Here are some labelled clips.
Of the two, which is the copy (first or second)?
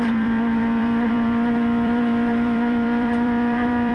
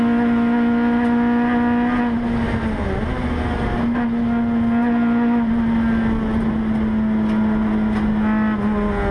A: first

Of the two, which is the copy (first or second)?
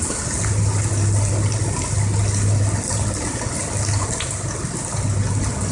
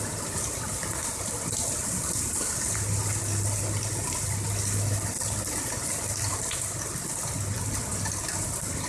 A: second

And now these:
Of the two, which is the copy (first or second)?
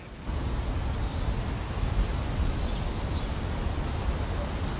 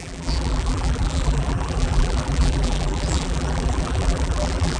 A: second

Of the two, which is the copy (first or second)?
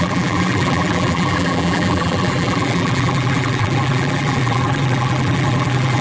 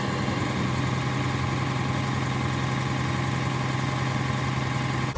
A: first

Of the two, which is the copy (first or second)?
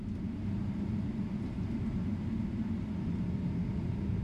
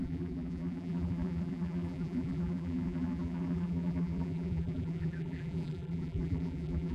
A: second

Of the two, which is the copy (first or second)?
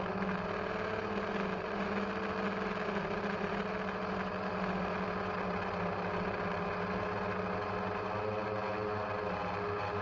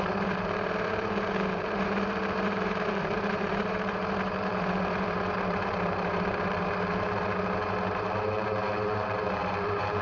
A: second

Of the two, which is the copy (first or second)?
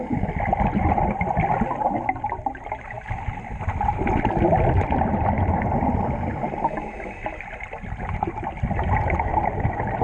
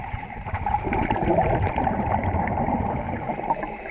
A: second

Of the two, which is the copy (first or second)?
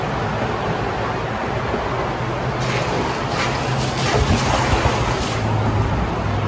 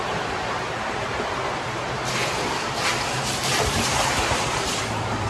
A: second